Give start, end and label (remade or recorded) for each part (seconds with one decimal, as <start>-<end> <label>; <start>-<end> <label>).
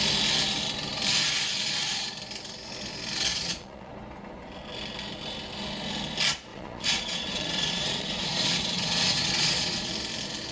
0.0-3.3 recorded; 3.3-3.9 remade; 3.9-6.5 recorded; 6.5-9.9 remade; 9.9-10.5 recorded